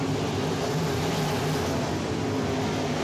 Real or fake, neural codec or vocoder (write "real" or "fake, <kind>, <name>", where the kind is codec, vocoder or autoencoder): real